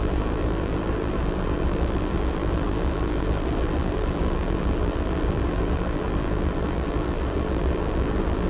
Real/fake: fake